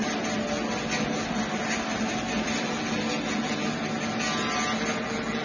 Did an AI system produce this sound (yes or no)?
no